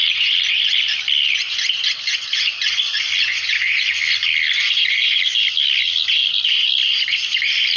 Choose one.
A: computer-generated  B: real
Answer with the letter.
B